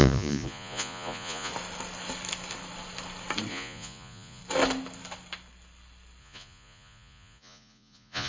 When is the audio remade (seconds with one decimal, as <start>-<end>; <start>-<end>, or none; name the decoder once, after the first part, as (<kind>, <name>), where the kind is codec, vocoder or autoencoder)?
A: 0.0-1.5 (vocoder, Vocos); 3.5-4.4; 6.2-8.3